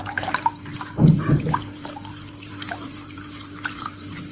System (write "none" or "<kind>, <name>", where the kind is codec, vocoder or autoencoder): vocoder, BigVGAN v2